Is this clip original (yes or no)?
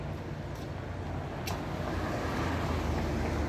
yes